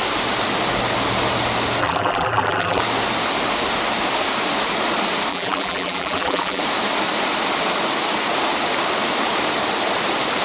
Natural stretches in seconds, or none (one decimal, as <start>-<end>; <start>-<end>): 0.0-1.8; 2.8-5.3; 6.6-10.4